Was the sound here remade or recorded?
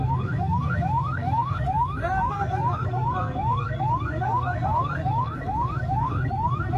remade